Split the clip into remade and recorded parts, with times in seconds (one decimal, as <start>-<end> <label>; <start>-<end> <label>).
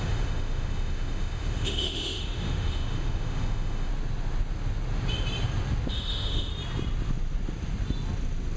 0.0-3.9 remade; 3.9-5.9 recorded; 5.9-6.5 remade; 6.5-8.6 recorded